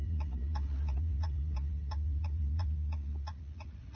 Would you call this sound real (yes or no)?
no